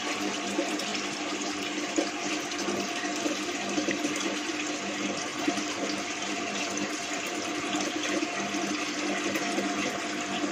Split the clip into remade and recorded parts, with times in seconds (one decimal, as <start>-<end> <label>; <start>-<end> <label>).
0.0-0.9 recorded; 0.9-1.6 remade; 1.6-5.3 recorded; 5.3-6.9 remade; 6.9-10.5 recorded